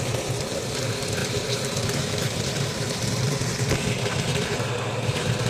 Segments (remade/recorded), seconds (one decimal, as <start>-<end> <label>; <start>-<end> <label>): 0.0-1.2 recorded; 1.2-3.7 remade; 3.7-5.5 recorded

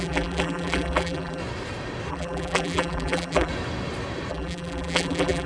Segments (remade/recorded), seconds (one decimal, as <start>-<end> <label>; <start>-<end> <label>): 0.0-1.4 remade; 1.4-2.1 recorded; 2.1-3.5 remade; 3.5-4.3 recorded; 4.3-5.5 remade

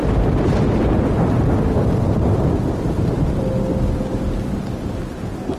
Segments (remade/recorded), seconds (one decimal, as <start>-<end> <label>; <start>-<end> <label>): 0.0-5.6 recorded

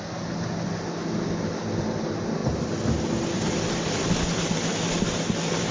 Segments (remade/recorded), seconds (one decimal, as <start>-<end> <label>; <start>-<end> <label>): 0.0-5.7 recorded

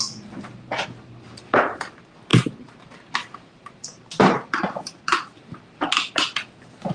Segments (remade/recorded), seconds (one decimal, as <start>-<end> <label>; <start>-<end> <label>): 0.0-2.3 recorded; 2.3-5.6 remade; 5.6-6.9 recorded

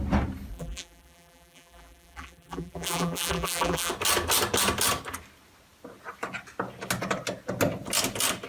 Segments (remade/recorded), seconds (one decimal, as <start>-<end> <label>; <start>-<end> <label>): 0.0-0.5 recorded; 0.5-3.9 remade; 3.9-8.5 recorded

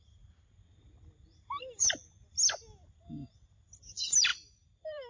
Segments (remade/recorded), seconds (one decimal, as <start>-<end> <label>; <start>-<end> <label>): 0.0-4.3 recorded; 4.3-5.1 remade